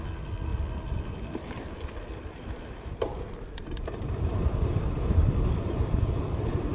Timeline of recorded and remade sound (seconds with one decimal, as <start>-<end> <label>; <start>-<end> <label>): 0.0-6.7 recorded